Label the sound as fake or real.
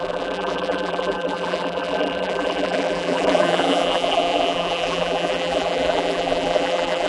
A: fake